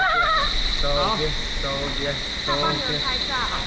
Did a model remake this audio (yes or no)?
no